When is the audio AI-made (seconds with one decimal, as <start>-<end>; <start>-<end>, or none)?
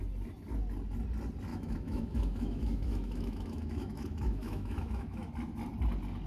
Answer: 1.5-5.3